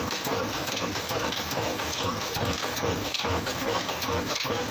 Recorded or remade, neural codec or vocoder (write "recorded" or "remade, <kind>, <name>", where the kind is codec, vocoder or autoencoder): remade, codec, DAC